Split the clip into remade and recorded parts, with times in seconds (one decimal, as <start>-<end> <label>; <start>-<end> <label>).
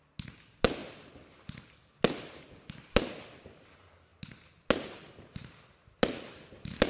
0.0-6.9 recorded